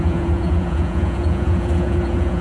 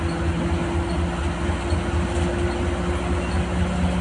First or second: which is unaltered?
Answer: second